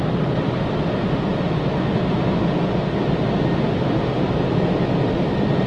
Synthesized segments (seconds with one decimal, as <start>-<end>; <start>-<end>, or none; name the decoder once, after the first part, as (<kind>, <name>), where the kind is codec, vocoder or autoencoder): none

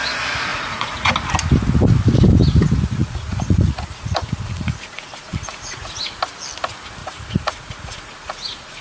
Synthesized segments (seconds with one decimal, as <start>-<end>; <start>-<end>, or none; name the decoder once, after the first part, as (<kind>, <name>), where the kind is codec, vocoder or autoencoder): 0.5-1.1 (vocoder, Vocos); 3.0-6.2; 7.0-8.8

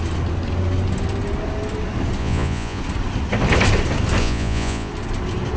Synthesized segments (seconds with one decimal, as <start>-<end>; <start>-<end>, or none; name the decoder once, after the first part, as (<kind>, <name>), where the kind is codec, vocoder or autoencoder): 2.2-2.8 (vocoder, Vocos); 4.2-4.9